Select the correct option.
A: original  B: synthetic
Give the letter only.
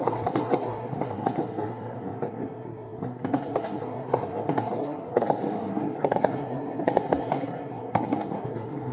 B